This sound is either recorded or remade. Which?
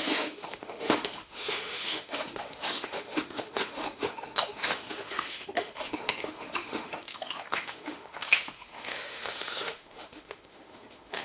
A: remade